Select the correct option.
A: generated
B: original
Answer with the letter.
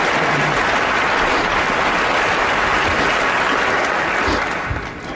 B